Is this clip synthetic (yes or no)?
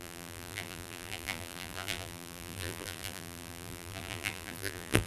yes